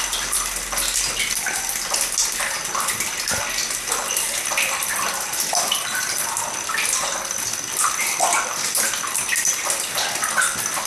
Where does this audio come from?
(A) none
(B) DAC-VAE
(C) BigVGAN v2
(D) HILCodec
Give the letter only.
A